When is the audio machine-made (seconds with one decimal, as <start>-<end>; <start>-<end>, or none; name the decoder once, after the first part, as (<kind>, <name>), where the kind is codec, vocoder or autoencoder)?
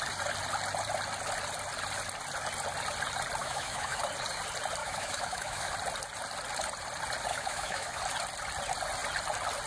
3.4-4.0 (autoencoder, DAC-VAE); 4.8-5.7; 7.3-8.0